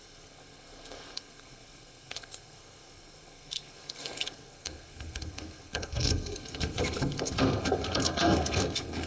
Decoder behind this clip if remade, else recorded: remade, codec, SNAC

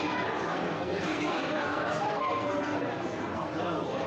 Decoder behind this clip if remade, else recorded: remade, codec, SNAC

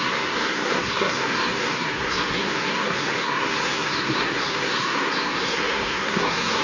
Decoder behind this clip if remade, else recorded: remade, codec, SNAC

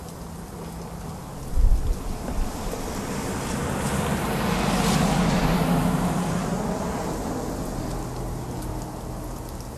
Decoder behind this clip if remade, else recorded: recorded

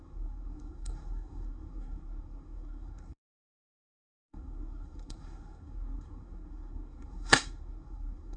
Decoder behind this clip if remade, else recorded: remade, codec, SNAC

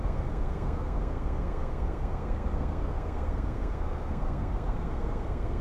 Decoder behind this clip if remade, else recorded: remade, codec, SNAC